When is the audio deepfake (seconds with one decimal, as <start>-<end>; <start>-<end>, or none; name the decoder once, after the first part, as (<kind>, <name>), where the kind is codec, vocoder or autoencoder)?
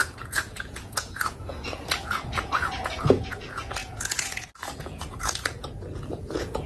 0.0-6.7 (vocoder, Vocos)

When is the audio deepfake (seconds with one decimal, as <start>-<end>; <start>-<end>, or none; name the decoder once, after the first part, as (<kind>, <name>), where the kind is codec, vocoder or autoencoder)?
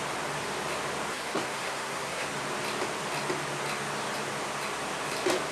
1.1-2.3 (codec, SNAC)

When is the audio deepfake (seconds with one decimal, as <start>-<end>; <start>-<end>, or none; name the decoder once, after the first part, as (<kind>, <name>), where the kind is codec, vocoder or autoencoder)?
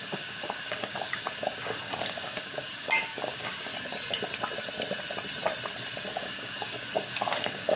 0.0-3.7 (codec, DAC); 6.1-7.8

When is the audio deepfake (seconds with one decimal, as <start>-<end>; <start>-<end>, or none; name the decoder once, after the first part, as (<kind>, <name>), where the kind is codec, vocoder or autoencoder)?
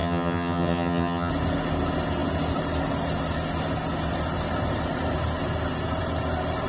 0.0-1.3 (vocoder, HiFi-GAN)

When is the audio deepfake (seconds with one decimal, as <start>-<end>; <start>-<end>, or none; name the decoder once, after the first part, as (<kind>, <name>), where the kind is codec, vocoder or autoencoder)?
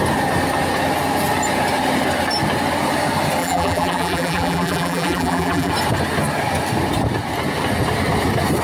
3.4-5.7 (vocoder, BigVGAN v2)